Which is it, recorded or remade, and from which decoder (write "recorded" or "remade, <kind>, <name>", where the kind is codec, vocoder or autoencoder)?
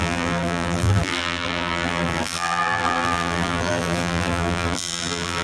remade, vocoder, BigVGAN v2